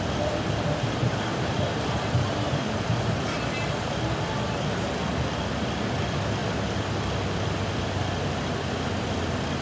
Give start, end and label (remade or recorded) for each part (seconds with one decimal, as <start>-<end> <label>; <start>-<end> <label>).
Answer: 0.0-1.0 recorded; 1.0-2.9 remade; 2.9-9.6 recorded